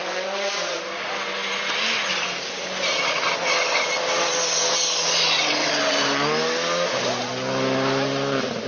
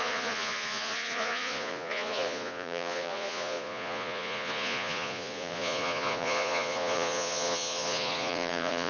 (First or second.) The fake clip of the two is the second